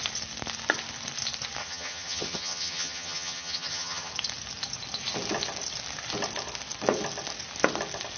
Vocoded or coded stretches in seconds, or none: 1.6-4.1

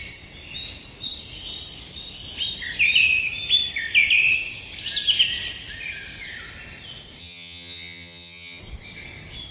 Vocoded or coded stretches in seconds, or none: 7.2-8.6